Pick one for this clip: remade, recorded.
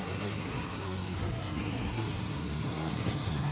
remade